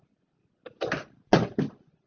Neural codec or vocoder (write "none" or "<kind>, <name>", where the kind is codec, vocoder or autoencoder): none